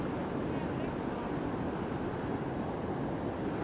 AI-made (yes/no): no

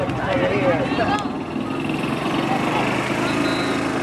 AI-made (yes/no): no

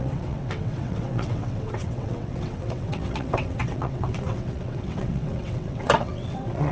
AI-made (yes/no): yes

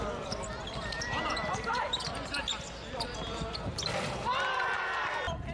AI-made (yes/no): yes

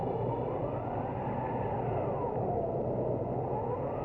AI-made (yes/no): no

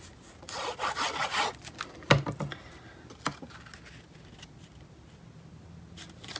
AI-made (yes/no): no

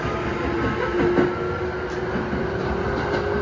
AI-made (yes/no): no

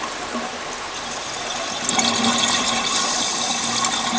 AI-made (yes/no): no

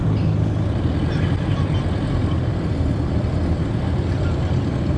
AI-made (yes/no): no